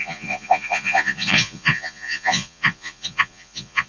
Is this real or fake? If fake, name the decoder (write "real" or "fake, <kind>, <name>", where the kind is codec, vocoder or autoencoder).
fake, vocoder, Vocos